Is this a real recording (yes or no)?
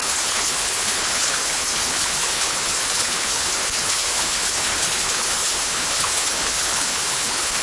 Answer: no